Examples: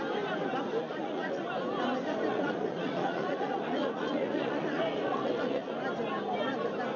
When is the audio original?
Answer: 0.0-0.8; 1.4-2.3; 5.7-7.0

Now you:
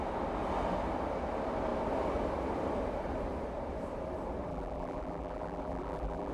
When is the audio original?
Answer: 0.0-4.5

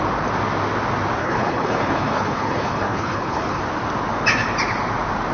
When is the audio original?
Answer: 0.0-1.2; 3.6-5.3

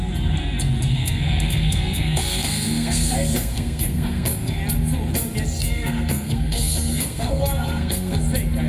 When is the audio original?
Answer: 0.0-0.9; 4.6-5.6; 8.2-8.7

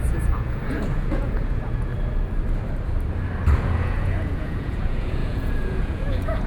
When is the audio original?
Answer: 1.9-3.6

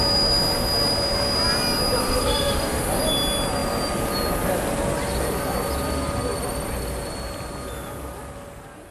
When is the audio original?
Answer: 0.0-2.0; 3.0-8.9

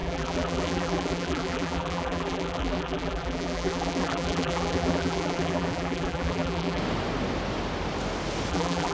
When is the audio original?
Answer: 6.8-8.5

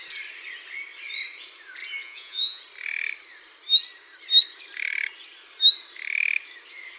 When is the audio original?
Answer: 0.0-2.0; 2.6-7.0